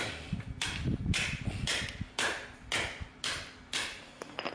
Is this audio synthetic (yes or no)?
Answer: no